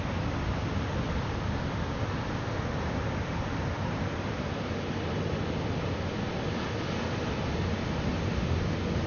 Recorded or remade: recorded